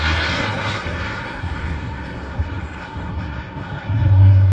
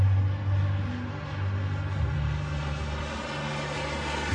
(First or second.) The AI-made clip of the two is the first